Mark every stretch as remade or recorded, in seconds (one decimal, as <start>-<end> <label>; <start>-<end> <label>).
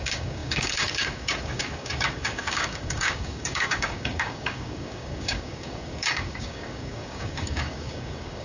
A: 0.0-8.4 remade